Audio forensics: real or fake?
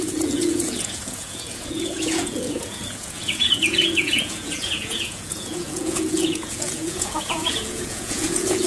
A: fake